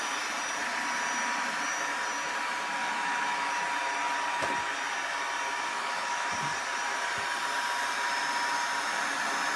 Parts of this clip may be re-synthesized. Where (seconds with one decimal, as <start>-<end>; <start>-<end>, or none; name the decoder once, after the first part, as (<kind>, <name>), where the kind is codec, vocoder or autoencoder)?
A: 2.8-3.5 (autoencoder, DAC-VAE); 5.7-6.3

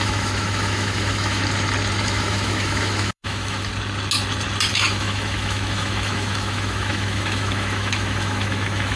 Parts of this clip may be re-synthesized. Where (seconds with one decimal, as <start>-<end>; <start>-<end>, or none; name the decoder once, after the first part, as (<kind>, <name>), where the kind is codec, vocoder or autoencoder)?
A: 0.0-1.4 (autoencoder, DAC-VAE); 2.0-3.7; 4.7-9.0

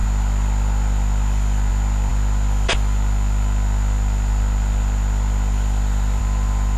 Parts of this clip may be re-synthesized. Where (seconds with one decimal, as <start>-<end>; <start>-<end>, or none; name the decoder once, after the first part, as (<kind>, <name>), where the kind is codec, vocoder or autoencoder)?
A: none

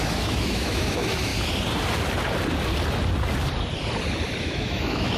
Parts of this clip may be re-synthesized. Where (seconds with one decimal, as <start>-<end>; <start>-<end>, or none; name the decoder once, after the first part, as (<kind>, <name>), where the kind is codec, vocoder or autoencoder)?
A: 0.0-1.3 (autoencoder, DAC-VAE); 4.4-5.2

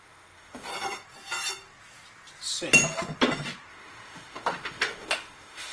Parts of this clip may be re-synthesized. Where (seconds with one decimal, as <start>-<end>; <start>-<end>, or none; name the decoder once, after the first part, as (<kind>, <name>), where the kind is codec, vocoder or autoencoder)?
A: 0.0-0.7 (autoencoder, DAC-VAE); 3.7-5.7